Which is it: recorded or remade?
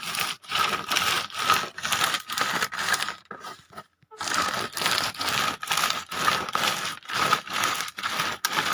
recorded